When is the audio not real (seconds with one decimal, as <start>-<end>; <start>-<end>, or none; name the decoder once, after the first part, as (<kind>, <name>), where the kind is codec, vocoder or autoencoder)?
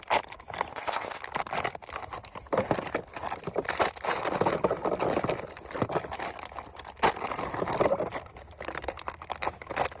0.7-1.2 (codec, ZipCodec)